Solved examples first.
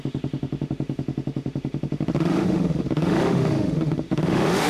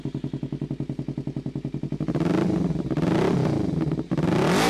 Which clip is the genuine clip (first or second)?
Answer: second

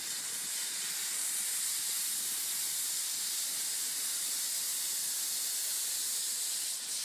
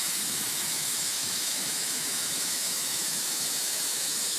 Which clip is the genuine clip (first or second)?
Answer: first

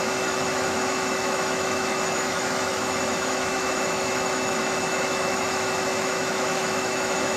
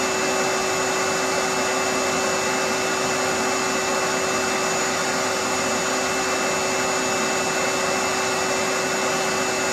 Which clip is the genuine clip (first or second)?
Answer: second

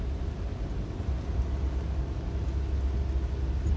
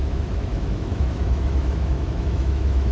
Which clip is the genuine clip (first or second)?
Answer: first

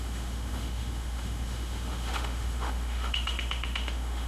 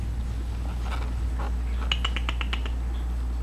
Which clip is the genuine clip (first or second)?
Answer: second